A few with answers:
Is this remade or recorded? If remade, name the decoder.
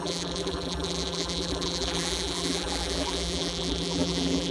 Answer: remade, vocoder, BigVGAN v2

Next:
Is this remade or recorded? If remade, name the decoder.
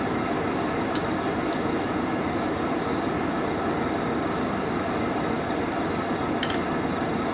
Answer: recorded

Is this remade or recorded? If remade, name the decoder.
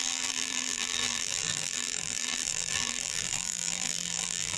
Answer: remade, vocoder, BigVGAN v2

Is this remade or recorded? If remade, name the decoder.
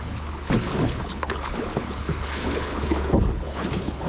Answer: remade, codec, HILCodec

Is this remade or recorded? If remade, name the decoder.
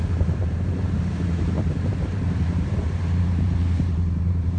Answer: remade, vocoder, BigVGAN v2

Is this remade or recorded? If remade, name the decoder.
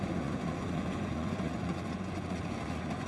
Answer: remade, vocoder, Vocos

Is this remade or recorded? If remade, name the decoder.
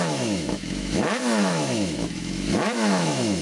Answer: remade, autoencoder, DAC-VAE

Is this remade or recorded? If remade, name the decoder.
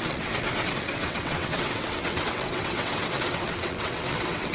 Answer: remade, vocoder, WaveNeXt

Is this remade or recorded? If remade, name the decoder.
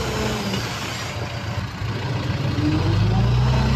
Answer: recorded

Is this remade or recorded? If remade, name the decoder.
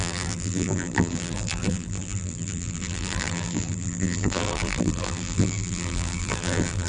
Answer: remade, vocoder, BigVGAN v2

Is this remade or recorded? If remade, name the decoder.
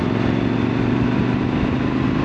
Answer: recorded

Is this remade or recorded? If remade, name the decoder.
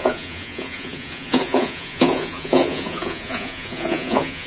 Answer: remade, vocoder, Vocos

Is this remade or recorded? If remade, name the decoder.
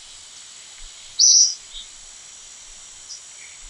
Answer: recorded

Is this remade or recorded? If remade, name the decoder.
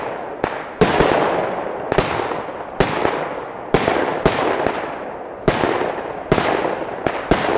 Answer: recorded